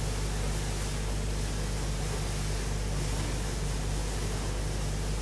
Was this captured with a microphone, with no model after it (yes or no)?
yes